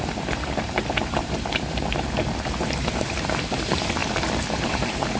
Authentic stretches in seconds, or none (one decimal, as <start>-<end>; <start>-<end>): 4.0-4.6